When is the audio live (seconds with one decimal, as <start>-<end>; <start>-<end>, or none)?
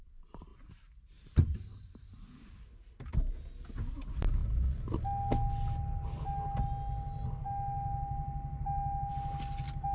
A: 0.0-0.5; 2.5-9.9